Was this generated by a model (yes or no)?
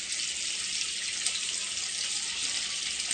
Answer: no